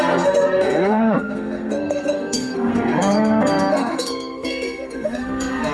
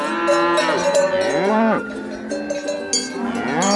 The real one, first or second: second